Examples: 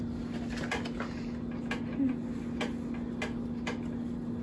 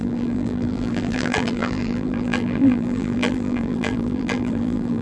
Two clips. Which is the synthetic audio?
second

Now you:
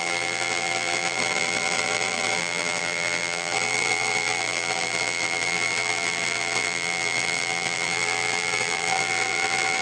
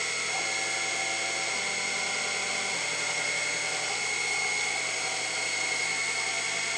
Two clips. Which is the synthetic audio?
first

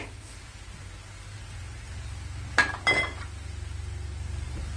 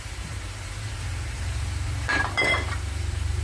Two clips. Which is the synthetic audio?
second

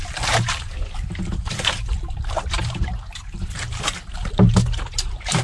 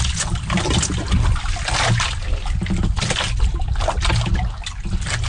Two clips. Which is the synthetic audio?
first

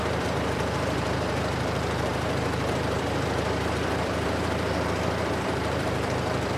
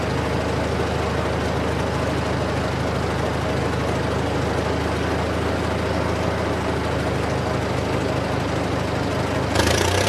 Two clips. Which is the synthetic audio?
first